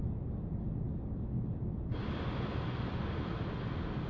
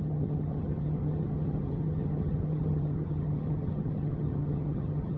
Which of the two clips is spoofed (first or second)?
second